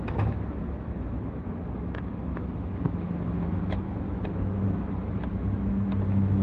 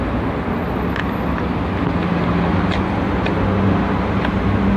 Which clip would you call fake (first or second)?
first